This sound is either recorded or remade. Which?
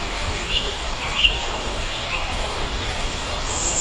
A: remade